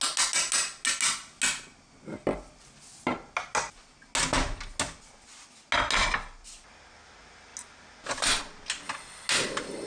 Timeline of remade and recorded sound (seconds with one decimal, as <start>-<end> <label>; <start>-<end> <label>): 0.0-9.9 recorded

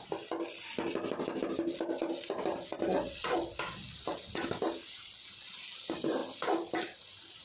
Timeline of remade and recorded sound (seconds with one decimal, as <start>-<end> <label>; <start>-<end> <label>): 0.0-7.4 recorded

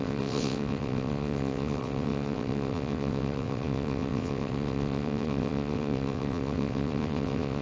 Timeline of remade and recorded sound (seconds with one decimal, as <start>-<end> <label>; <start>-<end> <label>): 0.0-7.6 remade

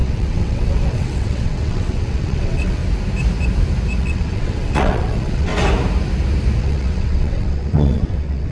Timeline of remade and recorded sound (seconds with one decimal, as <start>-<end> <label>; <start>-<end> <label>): 0.0-2.8 remade; 2.8-4.0 recorded; 4.0-5.5 remade; 5.5-6.6 recorded; 6.6-8.5 remade